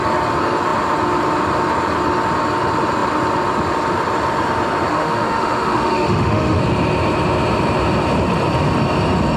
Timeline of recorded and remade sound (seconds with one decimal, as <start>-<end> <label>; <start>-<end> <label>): 0.0-4.9 recorded; 4.9-6.6 remade; 6.6-9.4 recorded